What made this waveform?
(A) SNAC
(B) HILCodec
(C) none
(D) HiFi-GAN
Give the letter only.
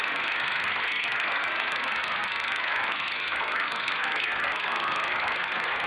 A